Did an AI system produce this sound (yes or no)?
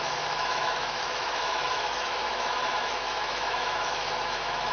yes